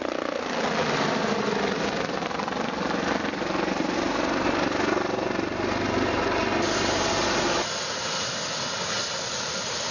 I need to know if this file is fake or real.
real